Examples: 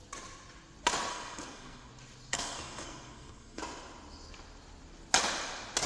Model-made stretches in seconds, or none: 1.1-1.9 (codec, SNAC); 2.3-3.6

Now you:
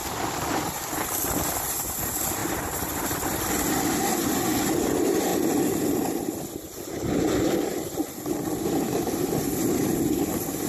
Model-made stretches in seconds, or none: none

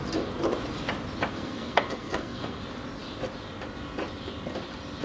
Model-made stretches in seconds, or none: 1.3-2.6 (codec, SNAC)

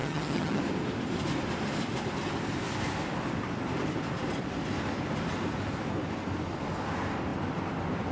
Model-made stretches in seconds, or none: 0.0-0.6 (vocoder, HiFi-GAN)

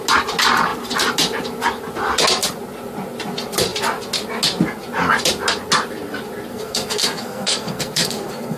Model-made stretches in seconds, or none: 6.5-8.6 (codec, SNAC)

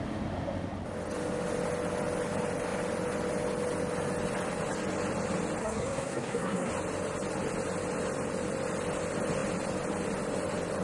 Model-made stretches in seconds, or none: 5.6-6.7 (codec, SNAC)

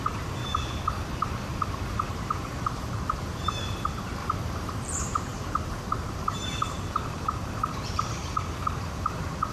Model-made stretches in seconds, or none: 0.0-0.4 (vocoder, BigVGAN v2); 1.9-4.2; 4.7-9.5

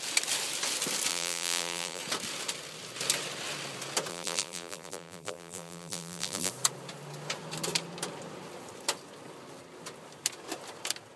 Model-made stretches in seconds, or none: 1.1-2.0 (vocoder, BigVGAN v2); 4.1-6.5